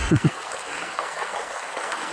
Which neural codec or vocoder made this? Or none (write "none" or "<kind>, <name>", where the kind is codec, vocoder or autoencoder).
codec, SNAC